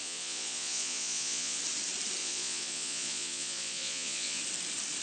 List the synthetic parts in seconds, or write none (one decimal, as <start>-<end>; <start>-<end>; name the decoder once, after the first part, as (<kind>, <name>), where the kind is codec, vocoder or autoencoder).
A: 0.0-1.6 (vocoder, Vocos); 2.2-4.4